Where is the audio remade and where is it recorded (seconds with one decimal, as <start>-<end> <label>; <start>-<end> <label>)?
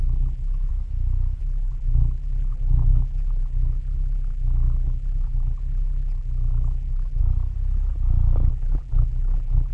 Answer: 0.0-0.7 remade; 0.7-1.4 recorded; 1.4-7.2 remade; 7.2-8.5 recorded; 8.5-9.7 remade